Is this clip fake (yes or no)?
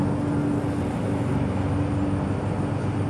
no